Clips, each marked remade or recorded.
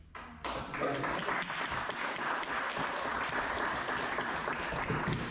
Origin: recorded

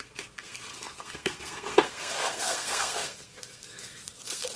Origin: remade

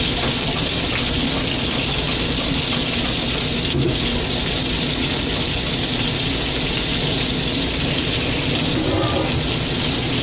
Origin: recorded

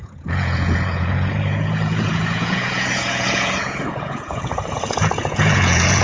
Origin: remade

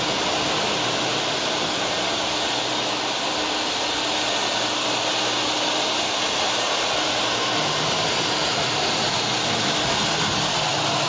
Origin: recorded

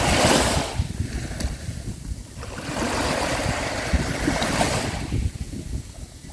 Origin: recorded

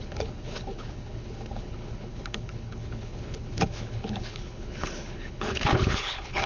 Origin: remade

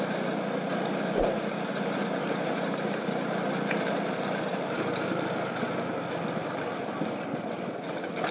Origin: recorded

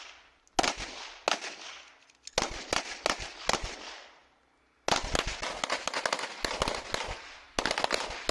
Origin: recorded